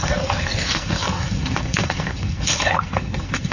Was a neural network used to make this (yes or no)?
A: yes